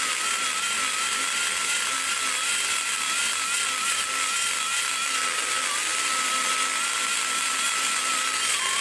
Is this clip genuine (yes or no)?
yes